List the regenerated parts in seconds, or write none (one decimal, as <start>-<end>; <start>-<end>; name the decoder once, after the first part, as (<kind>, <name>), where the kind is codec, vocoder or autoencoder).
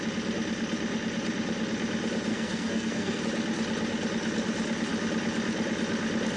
2.3-3.2 (codec, SNAC)